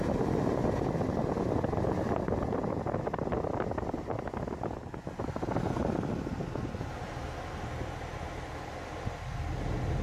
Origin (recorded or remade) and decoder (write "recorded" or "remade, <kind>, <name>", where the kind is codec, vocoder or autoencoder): recorded